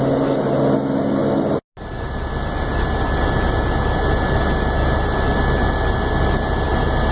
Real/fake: real